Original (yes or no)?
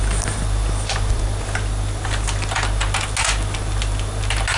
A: yes